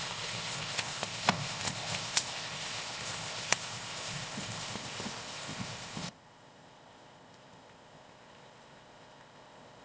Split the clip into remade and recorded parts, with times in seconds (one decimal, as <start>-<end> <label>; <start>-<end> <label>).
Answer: 0.0-9.8 remade